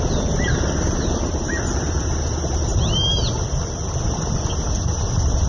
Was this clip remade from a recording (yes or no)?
no